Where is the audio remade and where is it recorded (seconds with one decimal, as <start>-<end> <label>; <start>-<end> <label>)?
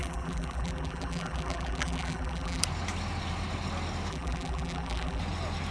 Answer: 0.0-2.6 remade; 2.6-4.1 recorded; 4.1-5.2 remade; 5.2-5.7 recorded